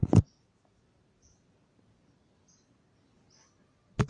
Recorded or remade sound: recorded